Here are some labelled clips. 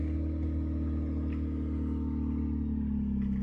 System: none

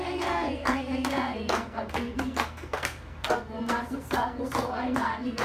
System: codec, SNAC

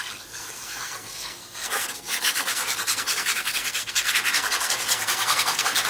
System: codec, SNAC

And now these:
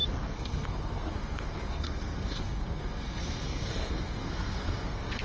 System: codec, SNAC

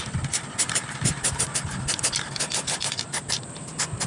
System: none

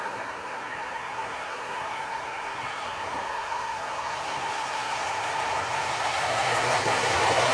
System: codec, SNAC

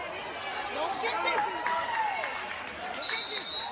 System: none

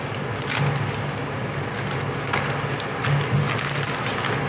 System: none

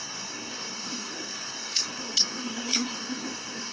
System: codec, SNAC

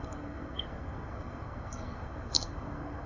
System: codec, SNAC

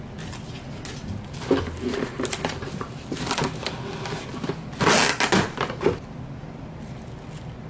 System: none